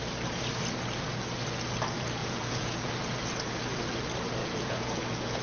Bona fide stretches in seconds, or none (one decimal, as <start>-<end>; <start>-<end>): 0.0-2.2; 2.9-4.4